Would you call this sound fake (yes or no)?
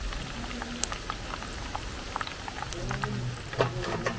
no